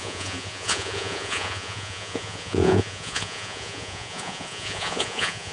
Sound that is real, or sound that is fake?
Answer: fake